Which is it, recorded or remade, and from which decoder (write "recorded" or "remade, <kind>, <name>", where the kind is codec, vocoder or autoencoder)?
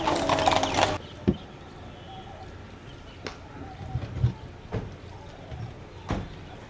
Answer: recorded